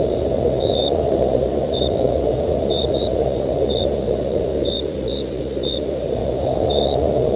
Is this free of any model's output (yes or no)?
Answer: no